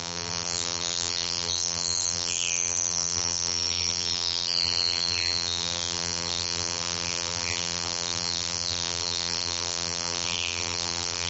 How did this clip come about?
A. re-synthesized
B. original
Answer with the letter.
A